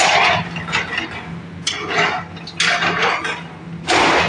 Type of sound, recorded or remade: recorded